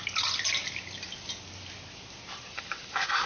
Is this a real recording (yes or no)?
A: yes